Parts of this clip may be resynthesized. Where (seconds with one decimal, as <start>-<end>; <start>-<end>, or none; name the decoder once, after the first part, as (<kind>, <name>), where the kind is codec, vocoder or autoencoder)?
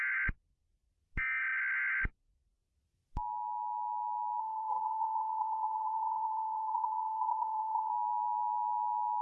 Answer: 4.4-7.9 (vocoder, BigVGAN v2)